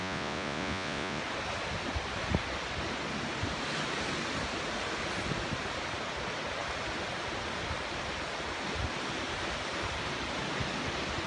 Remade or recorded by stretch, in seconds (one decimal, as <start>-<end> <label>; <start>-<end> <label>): 0.0-1.2 remade; 1.2-11.3 recorded